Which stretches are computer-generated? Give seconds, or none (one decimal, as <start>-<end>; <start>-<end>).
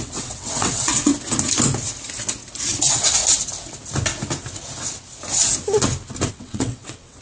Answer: 0.0-1.1; 2.8-3.2; 6.3-7.2